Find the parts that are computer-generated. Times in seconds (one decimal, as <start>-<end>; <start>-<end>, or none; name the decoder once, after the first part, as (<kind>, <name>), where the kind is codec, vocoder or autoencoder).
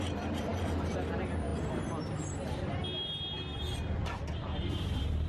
0.0-1.5 (vocoder, BigVGAN v2); 4.7-5.3